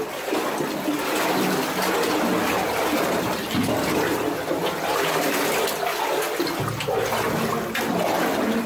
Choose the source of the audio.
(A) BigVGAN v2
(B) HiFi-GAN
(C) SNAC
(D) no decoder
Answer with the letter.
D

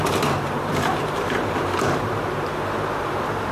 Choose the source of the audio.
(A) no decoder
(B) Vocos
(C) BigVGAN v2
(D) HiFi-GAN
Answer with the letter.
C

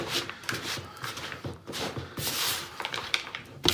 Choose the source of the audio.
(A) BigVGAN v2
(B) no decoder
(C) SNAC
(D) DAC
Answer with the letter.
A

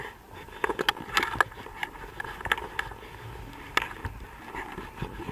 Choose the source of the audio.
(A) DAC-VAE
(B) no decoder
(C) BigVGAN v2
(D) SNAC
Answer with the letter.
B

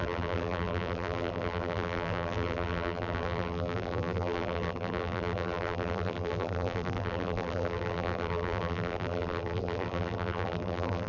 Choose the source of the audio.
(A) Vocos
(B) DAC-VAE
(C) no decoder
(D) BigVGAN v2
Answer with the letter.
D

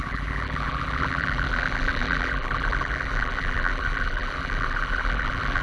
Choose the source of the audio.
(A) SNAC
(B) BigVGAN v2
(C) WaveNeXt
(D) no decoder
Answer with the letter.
B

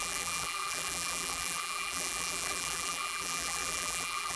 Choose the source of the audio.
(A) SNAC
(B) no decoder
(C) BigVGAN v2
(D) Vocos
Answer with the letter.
C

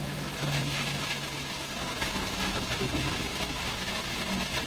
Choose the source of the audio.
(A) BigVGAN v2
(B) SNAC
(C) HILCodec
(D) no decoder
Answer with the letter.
D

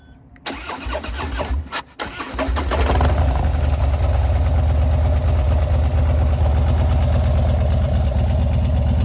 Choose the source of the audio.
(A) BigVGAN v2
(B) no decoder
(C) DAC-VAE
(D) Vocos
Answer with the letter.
B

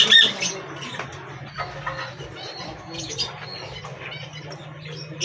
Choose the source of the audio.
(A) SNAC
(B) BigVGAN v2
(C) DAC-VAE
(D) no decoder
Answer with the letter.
D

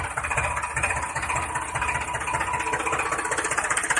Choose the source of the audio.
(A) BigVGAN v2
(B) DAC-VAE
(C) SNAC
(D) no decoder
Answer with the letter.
A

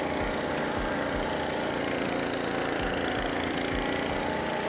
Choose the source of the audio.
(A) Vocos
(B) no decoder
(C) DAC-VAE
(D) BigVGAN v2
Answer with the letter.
D